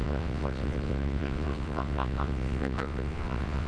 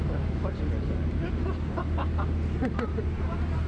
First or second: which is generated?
first